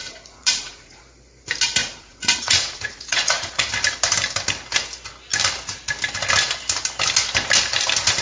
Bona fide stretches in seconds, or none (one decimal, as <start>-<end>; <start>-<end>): 1.0-1.8; 3.7-8.2